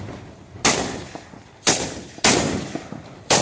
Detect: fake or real real